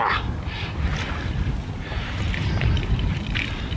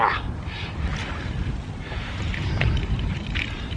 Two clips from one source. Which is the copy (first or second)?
first